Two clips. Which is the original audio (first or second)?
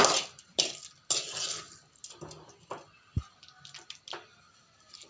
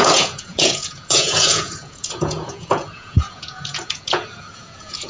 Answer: first